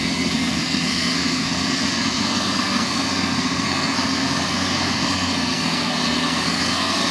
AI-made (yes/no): yes